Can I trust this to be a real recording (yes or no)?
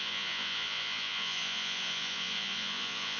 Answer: no